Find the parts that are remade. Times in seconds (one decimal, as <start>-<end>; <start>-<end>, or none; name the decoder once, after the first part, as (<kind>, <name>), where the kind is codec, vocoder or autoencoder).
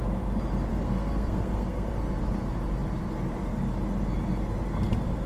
0.7-1.9 (codec, SNAC)